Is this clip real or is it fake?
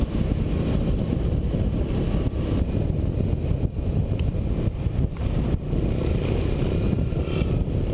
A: real